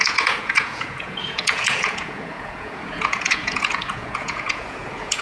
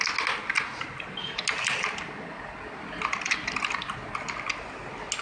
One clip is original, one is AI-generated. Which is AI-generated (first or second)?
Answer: first